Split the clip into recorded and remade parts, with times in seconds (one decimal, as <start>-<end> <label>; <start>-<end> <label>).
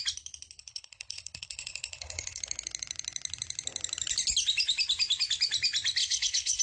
0.0-0.6 recorded; 0.6-2.4 remade; 2.4-6.0 recorded; 6.0-6.6 remade